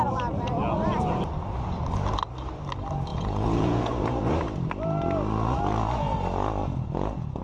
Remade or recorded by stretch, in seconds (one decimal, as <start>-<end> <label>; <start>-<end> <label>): 0.0-3.1 recorded; 3.1-3.9 remade; 3.9-6.6 recorded; 6.6-7.4 remade